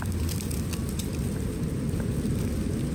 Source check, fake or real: fake